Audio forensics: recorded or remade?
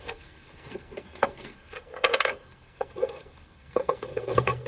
remade